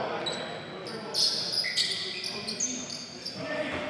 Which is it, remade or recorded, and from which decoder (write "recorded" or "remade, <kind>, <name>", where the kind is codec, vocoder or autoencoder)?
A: recorded